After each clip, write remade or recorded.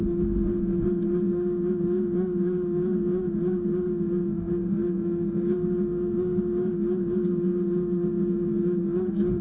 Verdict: remade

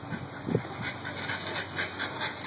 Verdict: recorded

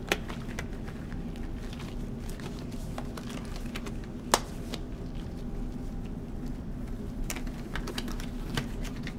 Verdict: recorded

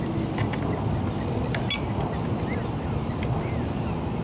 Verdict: recorded